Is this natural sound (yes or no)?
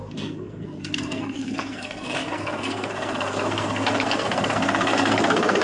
no